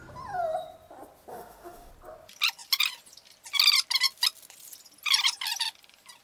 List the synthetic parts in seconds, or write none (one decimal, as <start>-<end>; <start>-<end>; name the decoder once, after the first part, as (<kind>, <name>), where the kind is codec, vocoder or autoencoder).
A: 1.3-1.9 (autoencoder, DAC-VAE)